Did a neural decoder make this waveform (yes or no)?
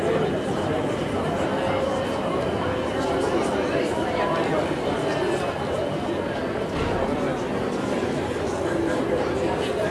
no